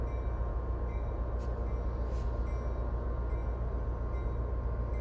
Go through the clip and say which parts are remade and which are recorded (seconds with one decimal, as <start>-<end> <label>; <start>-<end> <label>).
0.0-0.5 recorded; 0.5-1.1 remade; 1.1-5.0 recorded